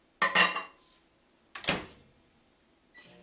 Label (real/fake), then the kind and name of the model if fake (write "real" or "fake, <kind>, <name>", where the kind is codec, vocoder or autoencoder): real